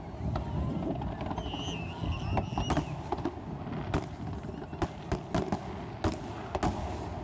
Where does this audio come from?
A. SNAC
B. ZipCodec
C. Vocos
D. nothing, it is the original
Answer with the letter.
D